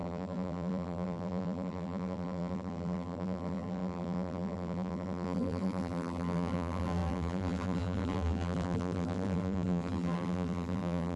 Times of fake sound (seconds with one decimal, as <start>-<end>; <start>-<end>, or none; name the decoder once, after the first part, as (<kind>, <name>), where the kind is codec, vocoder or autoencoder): 0.0-11.2 (vocoder, BigVGAN v2)